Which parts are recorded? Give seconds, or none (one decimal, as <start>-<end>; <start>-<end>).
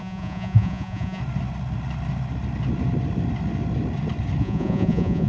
1.2-4.4